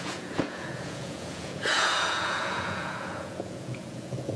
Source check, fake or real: fake